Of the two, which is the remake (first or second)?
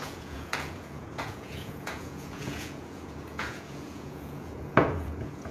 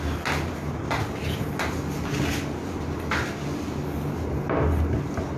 first